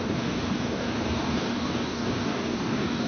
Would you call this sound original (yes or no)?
no